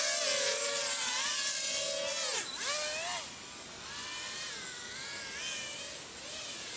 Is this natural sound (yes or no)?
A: yes